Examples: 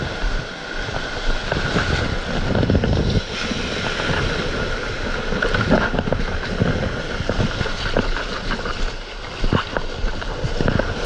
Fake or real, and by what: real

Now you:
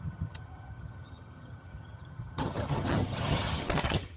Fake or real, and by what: fake, vocoder, HiFi-GAN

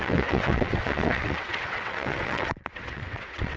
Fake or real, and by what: fake, vocoder, WaveNeXt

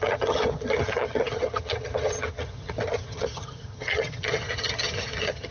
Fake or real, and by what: fake, vocoder, HiFi-GAN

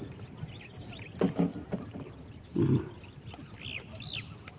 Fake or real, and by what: real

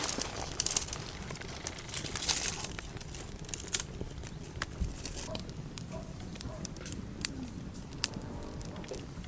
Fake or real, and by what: fake, vocoder, BigVGAN v2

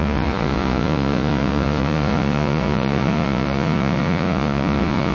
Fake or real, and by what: fake, vocoder, Vocos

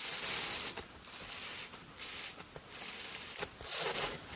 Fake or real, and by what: real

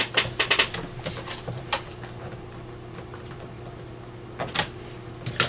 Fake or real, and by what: real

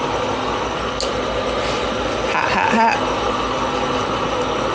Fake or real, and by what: real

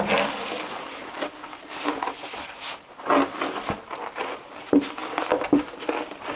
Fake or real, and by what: real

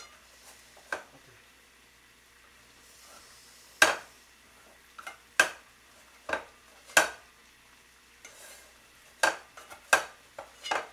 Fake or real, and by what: real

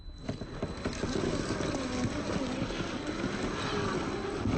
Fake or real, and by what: real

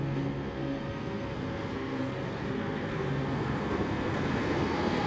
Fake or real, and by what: fake, codec, SNAC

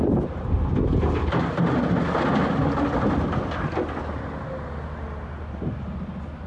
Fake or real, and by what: real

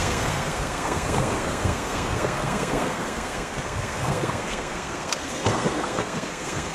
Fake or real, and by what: fake, codec, SNAC